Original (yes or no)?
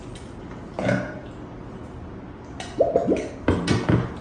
yes